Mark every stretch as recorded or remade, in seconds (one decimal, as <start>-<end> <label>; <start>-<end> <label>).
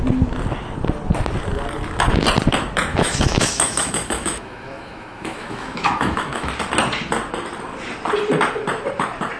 0.0-2.9 recorded; 2.9-6.5 remade; 6.5-9.4 recorded